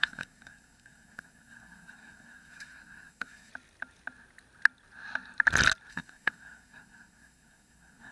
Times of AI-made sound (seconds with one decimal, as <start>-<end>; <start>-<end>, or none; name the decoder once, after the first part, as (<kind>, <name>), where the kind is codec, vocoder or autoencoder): 0.0-3.5 (codec, SNAC); 5.9-8.1